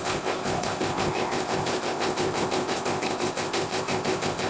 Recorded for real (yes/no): no